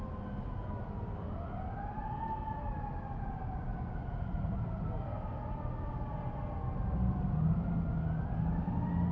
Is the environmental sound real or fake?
real